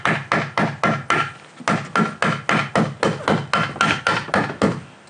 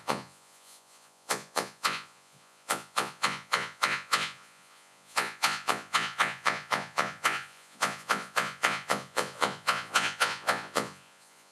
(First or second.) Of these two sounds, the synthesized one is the second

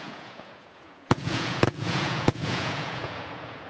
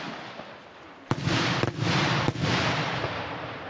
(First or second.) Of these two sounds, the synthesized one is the first